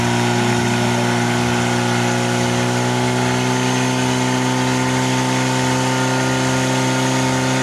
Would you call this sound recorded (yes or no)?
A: yes